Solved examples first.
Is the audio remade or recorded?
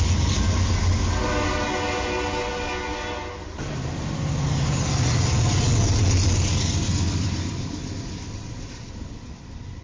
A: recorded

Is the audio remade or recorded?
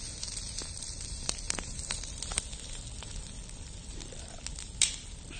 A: recorded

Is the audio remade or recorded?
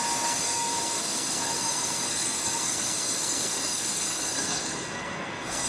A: remade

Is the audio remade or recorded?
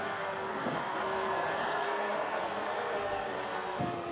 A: remade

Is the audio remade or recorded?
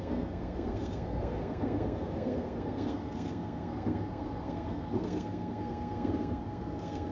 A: remade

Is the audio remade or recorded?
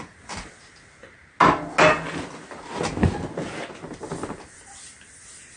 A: recorded